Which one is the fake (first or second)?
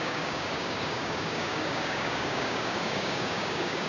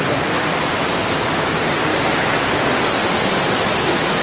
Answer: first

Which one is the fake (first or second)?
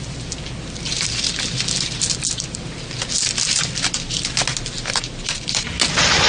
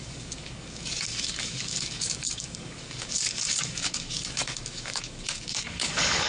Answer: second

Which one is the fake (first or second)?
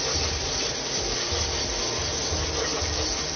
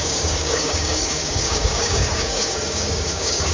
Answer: second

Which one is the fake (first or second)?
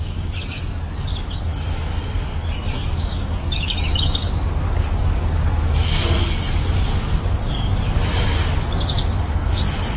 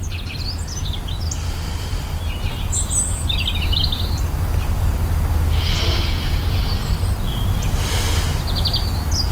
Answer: first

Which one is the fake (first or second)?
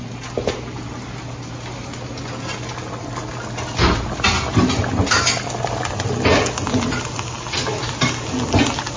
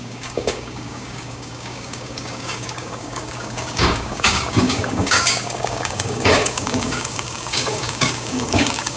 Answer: second